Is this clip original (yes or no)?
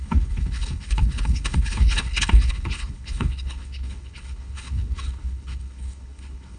no